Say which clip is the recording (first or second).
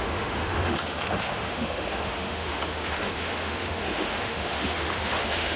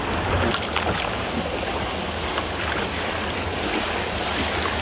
second